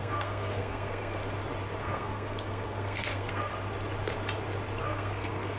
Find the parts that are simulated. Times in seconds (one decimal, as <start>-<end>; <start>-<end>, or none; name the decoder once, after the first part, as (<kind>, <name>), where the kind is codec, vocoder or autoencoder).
0.0-1.2 (codec, SNAC); 1.8-3.5; 4.8-5.6